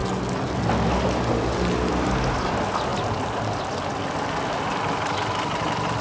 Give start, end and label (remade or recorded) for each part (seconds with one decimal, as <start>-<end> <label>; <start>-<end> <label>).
0.0-6.0 recorded